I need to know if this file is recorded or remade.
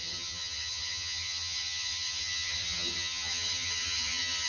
remade